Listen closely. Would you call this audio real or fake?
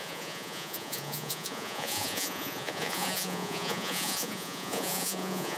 fake